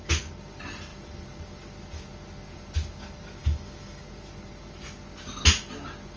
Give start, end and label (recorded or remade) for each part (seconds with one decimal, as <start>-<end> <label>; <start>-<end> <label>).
0.0-3.4 recorded; 3.4-4.0 remade; 4.0-6.2 recorded